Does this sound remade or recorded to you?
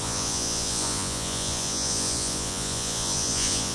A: remade